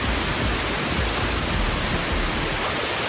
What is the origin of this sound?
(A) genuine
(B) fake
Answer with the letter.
A